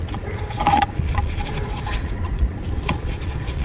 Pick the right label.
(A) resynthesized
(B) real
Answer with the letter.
A